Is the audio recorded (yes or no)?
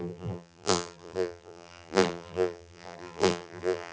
no